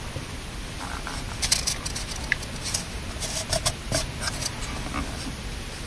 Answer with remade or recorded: recorded